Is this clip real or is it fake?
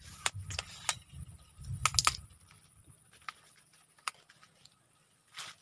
real